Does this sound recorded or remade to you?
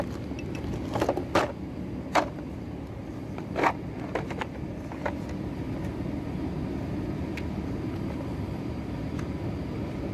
recorded